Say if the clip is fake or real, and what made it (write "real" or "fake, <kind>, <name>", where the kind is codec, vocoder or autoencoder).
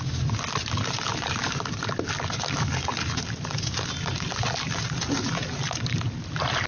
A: real